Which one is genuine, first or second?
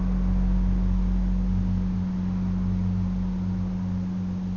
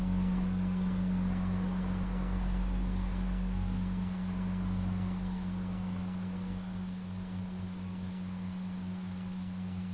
first